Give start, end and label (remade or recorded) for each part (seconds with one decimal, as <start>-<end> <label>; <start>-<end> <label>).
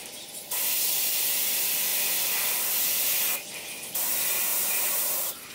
0.0-0.8 remade; 0.8-4.5 recorded; 4.5-5.1 remade; 5.1-5.5 recorded